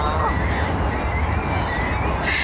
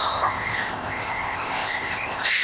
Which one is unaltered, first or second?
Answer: first